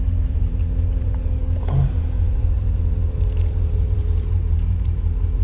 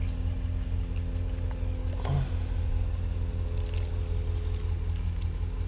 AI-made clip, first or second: first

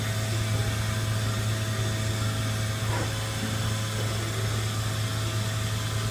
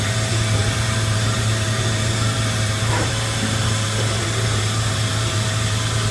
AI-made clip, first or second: second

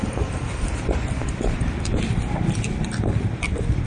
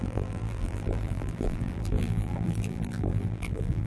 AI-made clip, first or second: second